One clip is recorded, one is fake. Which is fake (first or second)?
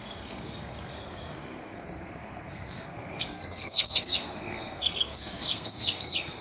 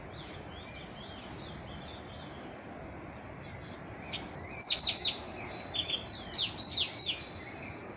first